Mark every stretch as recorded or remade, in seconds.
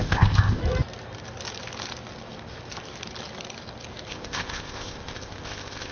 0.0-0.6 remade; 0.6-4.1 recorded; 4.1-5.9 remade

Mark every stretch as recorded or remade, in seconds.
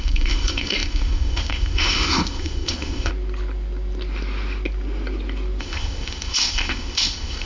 0.0-3.1 remade; 3.1-5.6 recorded; 5.6-7.5 remade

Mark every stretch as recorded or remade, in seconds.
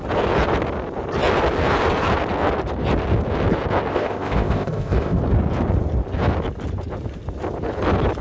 0.0-3.9 recorded; 3.9-5.2 remade; 5.2-8.2 recorded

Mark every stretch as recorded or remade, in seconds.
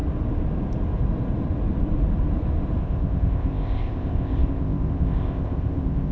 0.0-2.8 recorded; 2.8-6.1 remade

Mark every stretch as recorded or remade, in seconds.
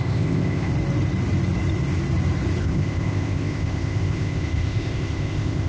0.0-0.7 remade; 0.7-2.6 recorded; 2.6-5.7 remade